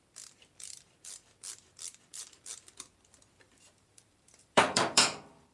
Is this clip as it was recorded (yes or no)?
no